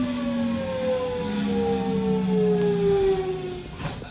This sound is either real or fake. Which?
real